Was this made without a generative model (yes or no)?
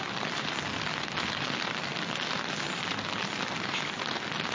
yes